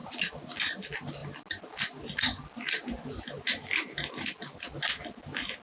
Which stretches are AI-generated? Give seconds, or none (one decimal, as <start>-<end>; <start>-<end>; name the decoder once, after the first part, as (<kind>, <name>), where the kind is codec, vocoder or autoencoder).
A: none